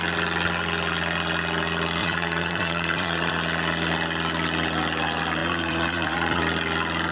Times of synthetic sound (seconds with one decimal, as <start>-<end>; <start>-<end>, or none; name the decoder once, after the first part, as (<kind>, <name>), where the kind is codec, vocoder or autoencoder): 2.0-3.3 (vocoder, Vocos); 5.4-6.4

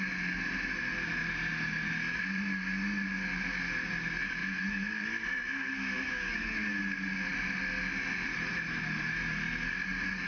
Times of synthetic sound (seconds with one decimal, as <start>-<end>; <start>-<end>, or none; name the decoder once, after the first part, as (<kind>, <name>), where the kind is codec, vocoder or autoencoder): 4.4-6.8 (autoencoder, DAC-VAE); 8.3-8.8

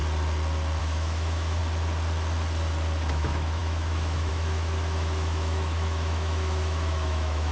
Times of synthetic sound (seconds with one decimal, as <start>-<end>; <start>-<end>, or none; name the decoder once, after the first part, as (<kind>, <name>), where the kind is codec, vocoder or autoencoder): 0.8-1.6 (autoencoder, DAC-VAE); 3.1-7.5